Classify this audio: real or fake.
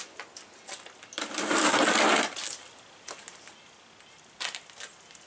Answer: real